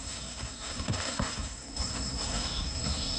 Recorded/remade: remade